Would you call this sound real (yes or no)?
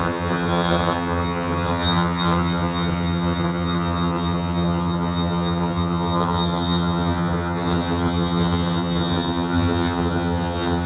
no